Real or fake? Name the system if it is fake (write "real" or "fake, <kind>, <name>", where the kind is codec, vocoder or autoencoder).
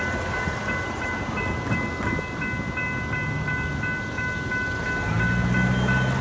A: real